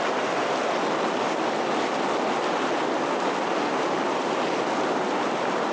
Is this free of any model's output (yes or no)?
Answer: yes